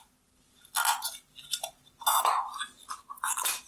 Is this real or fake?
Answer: real